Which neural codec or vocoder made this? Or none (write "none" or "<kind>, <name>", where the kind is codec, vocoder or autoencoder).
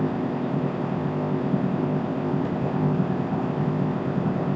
codec, ZipCodec